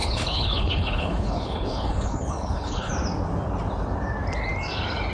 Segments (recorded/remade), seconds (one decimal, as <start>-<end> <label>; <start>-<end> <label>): 0.0-2.9 remade; 2.9-5.1 recorded